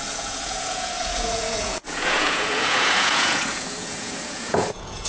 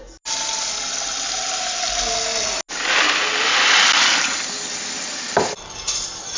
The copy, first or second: first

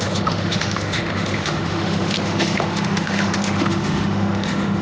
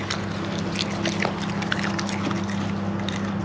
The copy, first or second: first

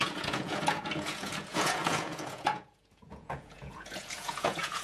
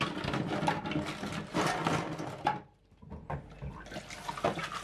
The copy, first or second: first